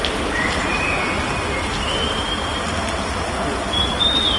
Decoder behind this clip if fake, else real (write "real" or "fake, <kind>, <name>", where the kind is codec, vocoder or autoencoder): real